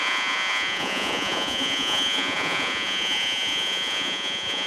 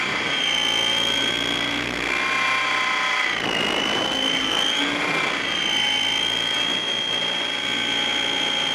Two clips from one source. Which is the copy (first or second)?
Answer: first